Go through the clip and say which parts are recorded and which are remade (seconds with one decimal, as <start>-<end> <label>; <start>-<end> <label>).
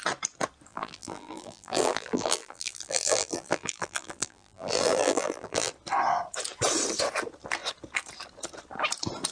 0.0-0.7 recorded; 0.7-5.7 remade; 5.7-9.3 recorded